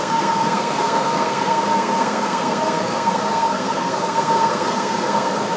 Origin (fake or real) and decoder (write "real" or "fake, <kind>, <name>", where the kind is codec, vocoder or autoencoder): fake, codec, SNAC